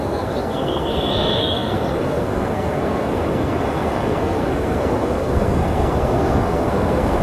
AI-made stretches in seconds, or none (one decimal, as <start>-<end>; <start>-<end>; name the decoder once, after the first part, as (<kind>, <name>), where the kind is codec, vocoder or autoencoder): 0.0-7.2 (codec, SNAC)